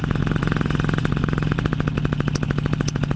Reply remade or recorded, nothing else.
recorded